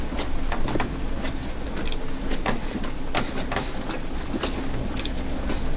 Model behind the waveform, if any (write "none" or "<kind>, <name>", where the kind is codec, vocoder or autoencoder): none